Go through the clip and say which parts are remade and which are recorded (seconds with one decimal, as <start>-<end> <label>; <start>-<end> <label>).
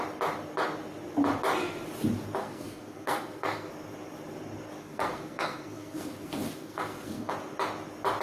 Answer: 0.0-2.4 recorded; 2.4-3.7 remade; 3.7-4.8 recorded; 4.8-7.3 remade; 7.3-8.2 recorded